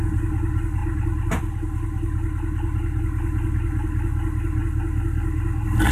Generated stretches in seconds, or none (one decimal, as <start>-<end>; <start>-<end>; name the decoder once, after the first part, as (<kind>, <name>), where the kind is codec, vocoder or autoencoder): none